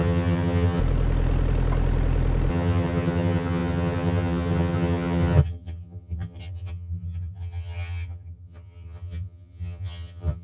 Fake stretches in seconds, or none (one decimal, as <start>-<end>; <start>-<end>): 0.0-0.8; 2.5-10.4